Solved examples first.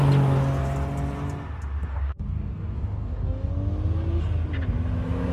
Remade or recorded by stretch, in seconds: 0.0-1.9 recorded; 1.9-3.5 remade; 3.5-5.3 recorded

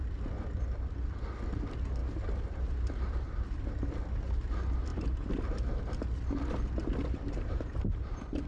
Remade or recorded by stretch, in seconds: 0.0-2.0 recorded; 2.0-3.6 remade; 3.6-4.9 recorded; 4.9-5.8 remade; 5.8-7.0 recorded; 7.0-8.5 remade

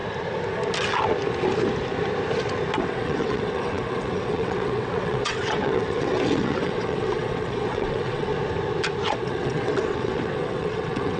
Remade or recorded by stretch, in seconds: 0.0-2.8 recorded; 2.8-8.3 remade; 8.3-9.1 recorded; 9.1-11.2 remade

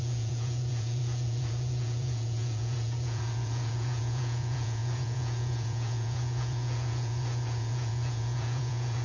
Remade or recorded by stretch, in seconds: 0.0-9.0 remade

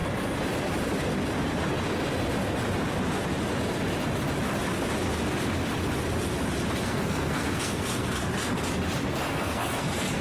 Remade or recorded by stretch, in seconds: 0.0-6.8 recorded; 6.8-8.7 remade; 8.7-9.3 recorded; 9.3-10.2 remade

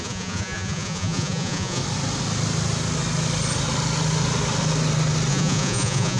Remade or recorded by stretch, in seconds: 0.0-1.8 remade; 1.8-5.3 recorded; 5.3-6.2 remade

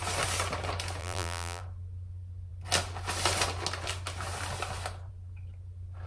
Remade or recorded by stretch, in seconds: 0.0-1.0 recorded; 1.0-1.6 remade; 1.6-6.1 recorded

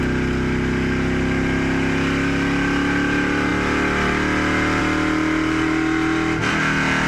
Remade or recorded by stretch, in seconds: 0.0-7.1 recorded